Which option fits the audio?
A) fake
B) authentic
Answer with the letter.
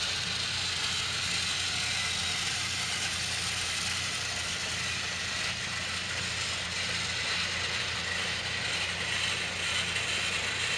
B